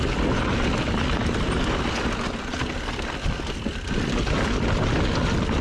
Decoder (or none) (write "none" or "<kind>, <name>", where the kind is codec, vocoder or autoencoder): none